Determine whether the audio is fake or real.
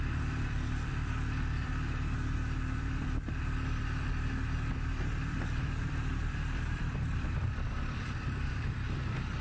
fake